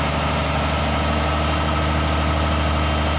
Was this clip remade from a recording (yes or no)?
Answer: no